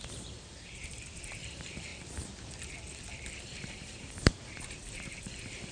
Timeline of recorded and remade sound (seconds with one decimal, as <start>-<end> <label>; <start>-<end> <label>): 0.0-1.9 remade; 1.9-3.4 recorded; 3.4-5.7 remade